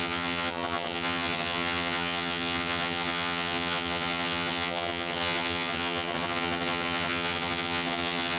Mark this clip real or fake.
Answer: fake